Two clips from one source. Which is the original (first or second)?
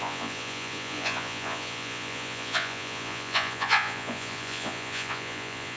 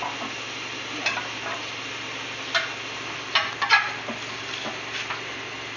second